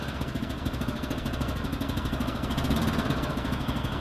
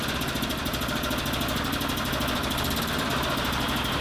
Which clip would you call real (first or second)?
second